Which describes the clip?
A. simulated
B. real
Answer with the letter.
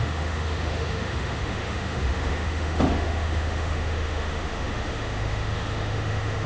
A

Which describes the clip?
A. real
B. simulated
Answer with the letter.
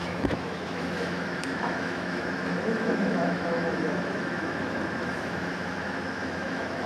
B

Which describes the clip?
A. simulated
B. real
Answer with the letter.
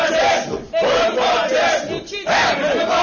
B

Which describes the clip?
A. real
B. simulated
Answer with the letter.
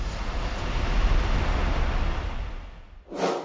A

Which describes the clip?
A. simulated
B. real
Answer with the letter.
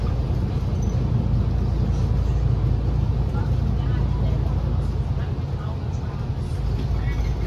B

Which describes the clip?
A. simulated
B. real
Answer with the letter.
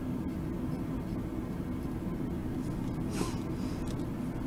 B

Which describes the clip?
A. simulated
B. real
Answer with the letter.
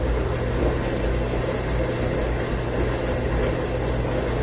B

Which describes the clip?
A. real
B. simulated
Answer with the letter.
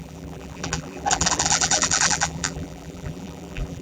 B